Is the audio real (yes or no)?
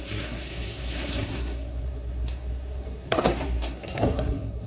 no